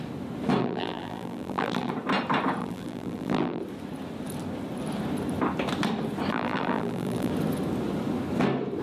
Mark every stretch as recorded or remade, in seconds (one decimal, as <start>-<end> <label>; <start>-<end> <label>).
0.0-0.6 recorded; 0.6-1.9 remade; 1.9-2.6 recorded; 2.6-3.6 remade; 3.6-6.3 recorded; 6.3-7.3 remade; 7.3-8.8 recorded